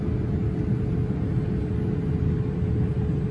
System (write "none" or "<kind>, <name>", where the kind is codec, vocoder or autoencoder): none